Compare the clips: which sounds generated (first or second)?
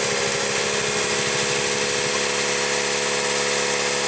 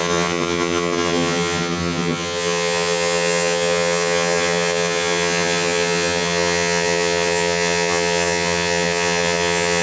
second